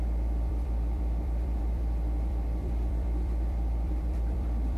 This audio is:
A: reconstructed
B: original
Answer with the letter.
A